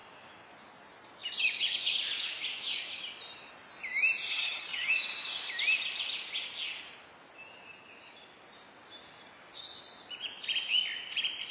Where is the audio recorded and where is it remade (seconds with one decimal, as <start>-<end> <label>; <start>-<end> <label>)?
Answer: 0.0-4.3 recorded; 4.3-4.9 remade; 4.9-11.5 recorded